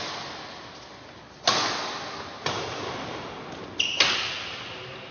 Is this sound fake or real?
real